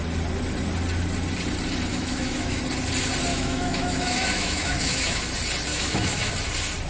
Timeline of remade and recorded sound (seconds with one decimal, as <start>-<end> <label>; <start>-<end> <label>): 0.0-1.9 recorded; 1.9-2.6 remade; 2.6-3.3 recorded; 3.3-5.2 remade; 5.2-5.7 recorded; 5.7-6.3 remade; 6.3-6.9 recorded